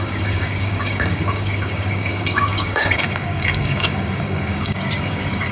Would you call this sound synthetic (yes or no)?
yes